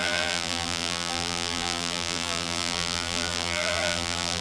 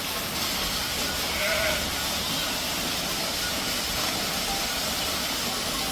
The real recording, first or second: second